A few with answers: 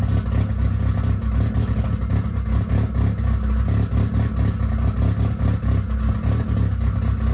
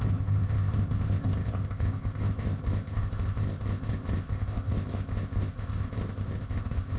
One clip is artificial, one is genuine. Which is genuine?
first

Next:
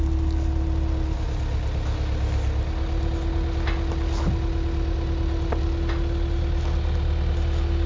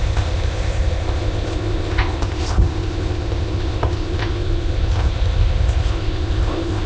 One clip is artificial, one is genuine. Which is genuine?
first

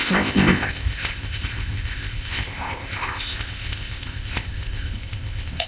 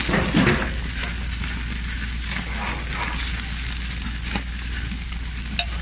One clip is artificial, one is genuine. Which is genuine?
second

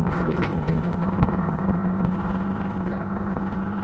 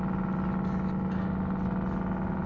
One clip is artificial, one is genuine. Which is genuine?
second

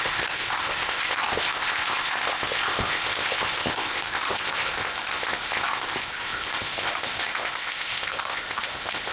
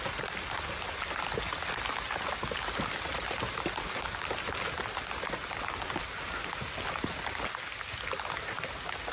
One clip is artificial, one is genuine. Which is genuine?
second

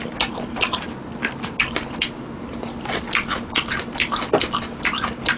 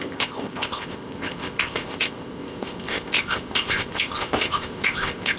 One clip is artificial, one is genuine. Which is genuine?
first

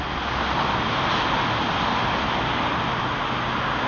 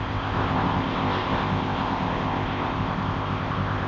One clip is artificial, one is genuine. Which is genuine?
first